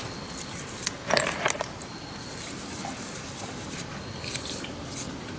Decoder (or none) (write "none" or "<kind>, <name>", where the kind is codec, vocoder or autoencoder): none